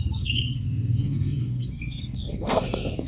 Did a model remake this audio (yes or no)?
yes